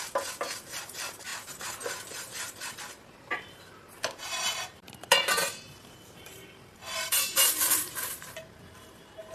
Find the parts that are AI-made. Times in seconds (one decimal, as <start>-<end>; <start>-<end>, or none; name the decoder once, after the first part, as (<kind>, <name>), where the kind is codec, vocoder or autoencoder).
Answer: 0.0-9.3 (vocoder, BigVGAN v2)